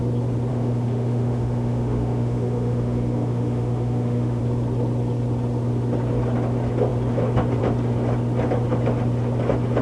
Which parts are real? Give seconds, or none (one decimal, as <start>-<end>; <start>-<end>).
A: 0.0-0.5; 4.4-9.8